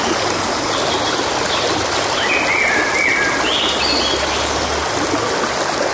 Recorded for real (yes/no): yes